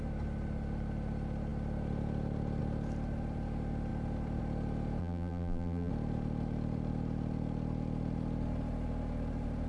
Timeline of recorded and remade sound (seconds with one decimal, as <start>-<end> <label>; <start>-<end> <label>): 0.0-5.0 recorded; 5.0-5.9 remade; 5.9-9.7 recorded